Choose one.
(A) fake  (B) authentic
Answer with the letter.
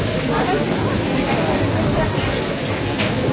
B